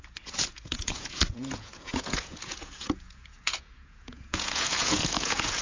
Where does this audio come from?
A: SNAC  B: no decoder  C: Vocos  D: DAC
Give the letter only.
C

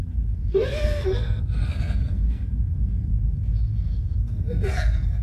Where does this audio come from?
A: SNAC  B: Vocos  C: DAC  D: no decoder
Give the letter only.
A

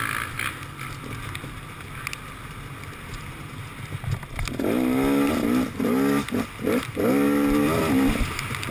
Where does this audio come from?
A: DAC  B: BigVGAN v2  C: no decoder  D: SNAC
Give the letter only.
C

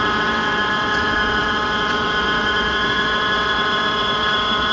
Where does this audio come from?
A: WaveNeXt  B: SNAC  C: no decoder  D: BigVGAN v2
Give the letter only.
A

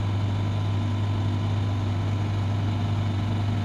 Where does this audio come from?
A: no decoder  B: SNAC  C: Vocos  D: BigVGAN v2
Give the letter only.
A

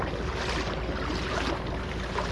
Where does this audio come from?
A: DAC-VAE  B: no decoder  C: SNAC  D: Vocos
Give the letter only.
B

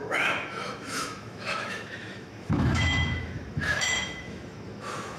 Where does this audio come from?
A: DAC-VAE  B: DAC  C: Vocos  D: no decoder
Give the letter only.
A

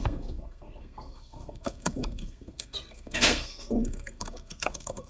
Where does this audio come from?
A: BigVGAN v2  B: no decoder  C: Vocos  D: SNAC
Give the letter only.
D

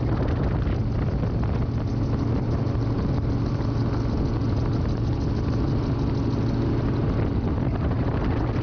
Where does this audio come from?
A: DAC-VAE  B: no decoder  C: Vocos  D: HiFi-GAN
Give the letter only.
B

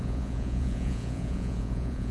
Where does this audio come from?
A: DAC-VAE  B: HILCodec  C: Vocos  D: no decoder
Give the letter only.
C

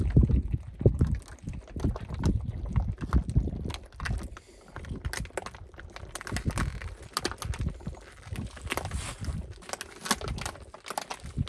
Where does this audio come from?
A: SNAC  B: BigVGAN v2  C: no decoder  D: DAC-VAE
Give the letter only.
C